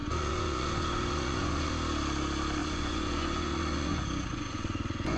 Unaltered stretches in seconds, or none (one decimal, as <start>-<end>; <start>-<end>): 1.7-2.6